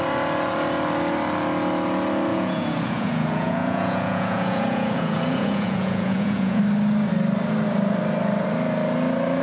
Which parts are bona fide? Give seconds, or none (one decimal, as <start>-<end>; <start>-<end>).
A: 0.0-2.3; 6.6-9.4